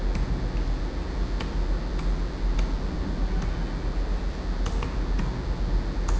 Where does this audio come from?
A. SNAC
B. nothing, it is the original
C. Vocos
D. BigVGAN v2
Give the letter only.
B